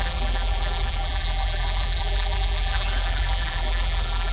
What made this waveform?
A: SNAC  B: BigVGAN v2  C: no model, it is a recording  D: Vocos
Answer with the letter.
B